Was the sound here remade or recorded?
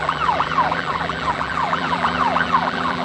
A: remade